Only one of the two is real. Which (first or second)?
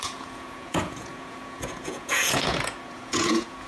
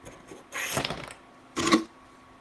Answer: second